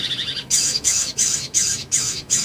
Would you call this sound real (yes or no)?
no